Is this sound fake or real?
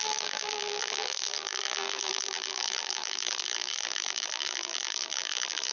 fake